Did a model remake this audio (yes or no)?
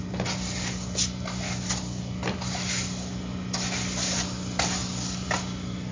no